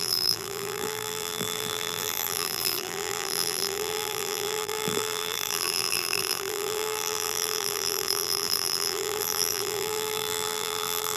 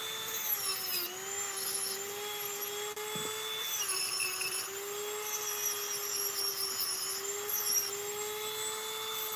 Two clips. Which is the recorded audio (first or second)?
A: second